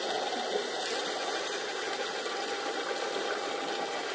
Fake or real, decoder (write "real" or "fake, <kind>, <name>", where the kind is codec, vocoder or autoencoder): real